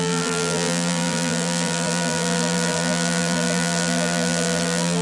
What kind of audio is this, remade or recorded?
remade